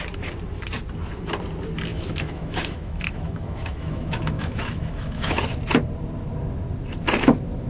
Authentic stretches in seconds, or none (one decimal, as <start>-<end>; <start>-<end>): 0.0-1.9; 5.4-7.7